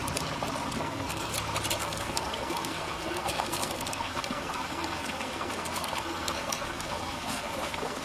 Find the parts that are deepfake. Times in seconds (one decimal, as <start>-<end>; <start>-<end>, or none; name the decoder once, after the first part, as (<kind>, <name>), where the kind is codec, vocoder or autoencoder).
0.8-1.3 (codec, SNAC); 1.8-8.0